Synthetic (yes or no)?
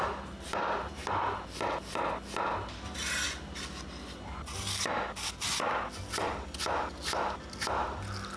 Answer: no